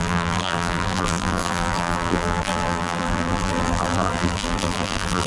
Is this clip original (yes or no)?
no